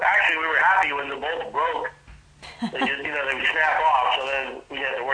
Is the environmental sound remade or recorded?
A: recorded